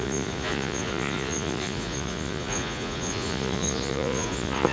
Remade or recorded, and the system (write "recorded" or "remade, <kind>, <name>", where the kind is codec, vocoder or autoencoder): remade, vocoder, Vocos